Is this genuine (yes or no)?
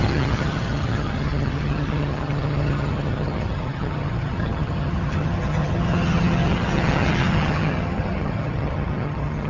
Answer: no